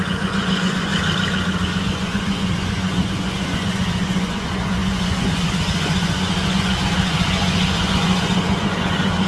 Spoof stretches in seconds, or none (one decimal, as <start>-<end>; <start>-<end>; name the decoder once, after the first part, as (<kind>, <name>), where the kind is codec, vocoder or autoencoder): 0.0-0.9 (vocoder, Vocos); 1.7-9.3

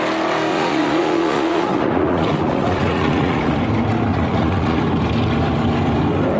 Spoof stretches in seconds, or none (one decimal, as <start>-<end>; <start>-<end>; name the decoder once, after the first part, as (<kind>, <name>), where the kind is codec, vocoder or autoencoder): 0.5-3.6 (vocoder, Vocos); 4.1-4.8

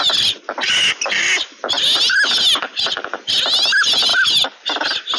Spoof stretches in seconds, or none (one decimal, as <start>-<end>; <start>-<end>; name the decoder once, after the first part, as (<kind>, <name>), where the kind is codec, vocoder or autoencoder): none

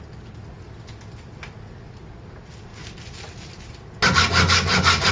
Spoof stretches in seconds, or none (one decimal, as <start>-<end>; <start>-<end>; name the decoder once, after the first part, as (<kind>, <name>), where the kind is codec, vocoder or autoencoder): none

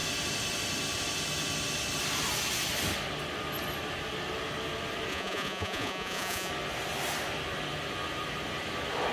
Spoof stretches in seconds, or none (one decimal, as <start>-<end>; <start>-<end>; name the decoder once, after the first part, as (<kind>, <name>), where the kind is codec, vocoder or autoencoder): 5.1-6.5 (vocoder, Vocos)

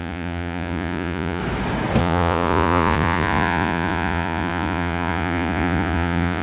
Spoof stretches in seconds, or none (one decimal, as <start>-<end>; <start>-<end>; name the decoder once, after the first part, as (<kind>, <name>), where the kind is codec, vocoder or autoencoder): 0.0-1.4 (vocoder, Vocos); 2.0-6.4

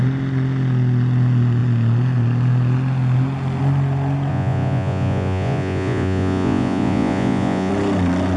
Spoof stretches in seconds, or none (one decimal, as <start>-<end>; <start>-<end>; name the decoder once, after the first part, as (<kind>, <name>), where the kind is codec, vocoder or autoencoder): 4.3-7.7 (vocoder, Vocos)